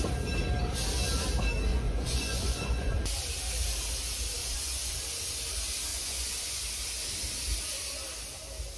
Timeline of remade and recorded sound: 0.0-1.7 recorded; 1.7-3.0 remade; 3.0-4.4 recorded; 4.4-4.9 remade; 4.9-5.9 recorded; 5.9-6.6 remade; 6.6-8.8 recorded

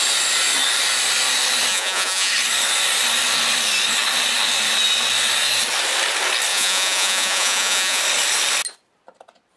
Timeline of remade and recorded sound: 0.0-1.7 recorded; 1.7-2.3 remade; 2.3-6.5 recorded; 6.5-8.0 remade; 8.0-9.6 recorded